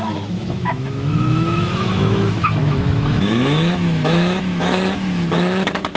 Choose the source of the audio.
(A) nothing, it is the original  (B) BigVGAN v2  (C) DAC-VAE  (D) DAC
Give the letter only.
C